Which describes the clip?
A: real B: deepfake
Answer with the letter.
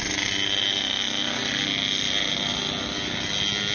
A